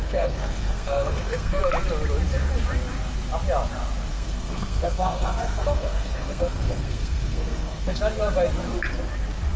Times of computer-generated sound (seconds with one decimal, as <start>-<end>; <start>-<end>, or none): 0.0-1.6; 4.1-8.0